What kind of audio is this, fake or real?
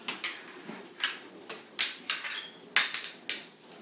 real